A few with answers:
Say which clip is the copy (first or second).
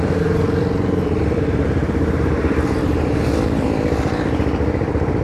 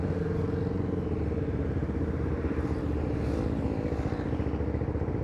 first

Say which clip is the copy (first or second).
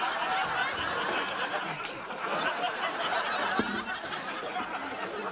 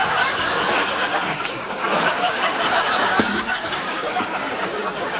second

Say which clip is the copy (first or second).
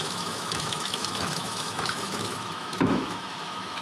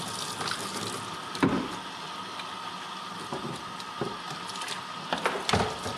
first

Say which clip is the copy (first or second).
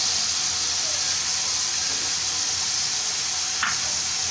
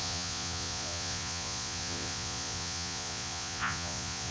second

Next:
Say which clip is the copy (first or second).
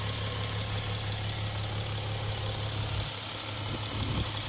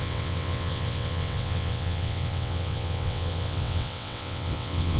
second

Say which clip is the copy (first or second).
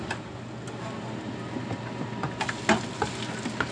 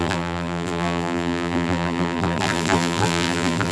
second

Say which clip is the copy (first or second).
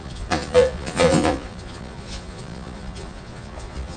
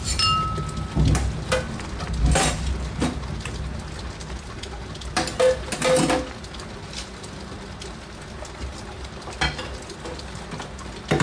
first